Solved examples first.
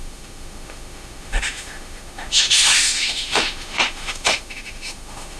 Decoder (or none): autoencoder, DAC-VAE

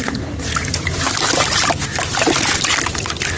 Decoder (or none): none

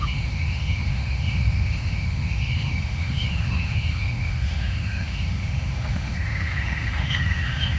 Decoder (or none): autoencoder, DAC-VAE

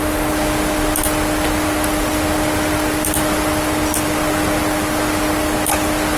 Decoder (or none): none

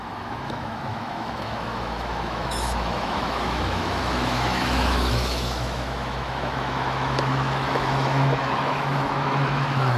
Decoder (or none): autoencoder, DAC-VAE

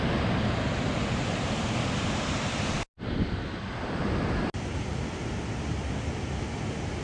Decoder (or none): none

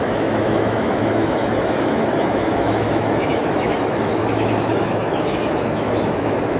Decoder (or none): autoencoder, DAC-VAE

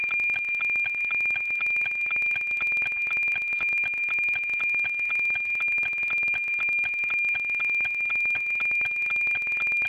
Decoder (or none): none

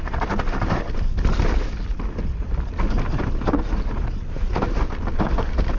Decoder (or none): none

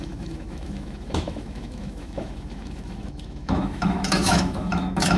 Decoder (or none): autoencoder, DAC-VAE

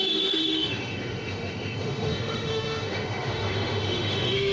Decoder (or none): autoencoder, DAC-VAE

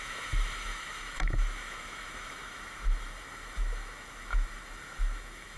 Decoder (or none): autoencoder, DAC-VAE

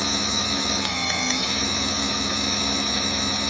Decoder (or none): autoencoder, DAC-VAE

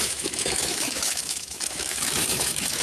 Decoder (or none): autoencoder, DAC-VAE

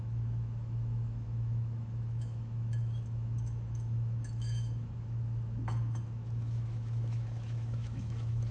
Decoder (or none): autoencoder, DAC-VAE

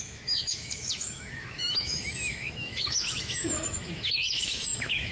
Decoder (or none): autoencoder, DAC-VAE